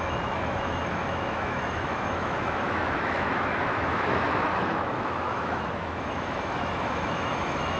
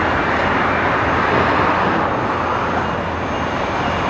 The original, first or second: second